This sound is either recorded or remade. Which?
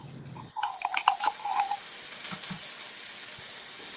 recorded